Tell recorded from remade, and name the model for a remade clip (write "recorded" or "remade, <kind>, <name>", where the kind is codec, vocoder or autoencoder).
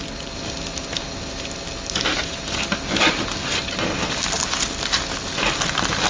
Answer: recorded